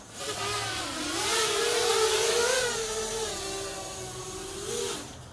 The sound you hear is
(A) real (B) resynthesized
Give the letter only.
A